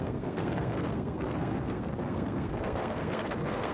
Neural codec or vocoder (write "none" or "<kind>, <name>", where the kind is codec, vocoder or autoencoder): codec, SNAC